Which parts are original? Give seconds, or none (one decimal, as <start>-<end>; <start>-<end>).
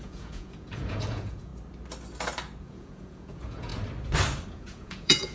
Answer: 1.5-2.6; 3.7-4.5